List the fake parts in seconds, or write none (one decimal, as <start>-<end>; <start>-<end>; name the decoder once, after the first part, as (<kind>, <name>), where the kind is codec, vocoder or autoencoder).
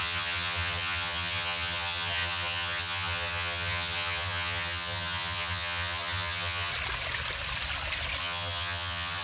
0.0-6.7 (vocoder, HiFi-GAN); 8.2-9.2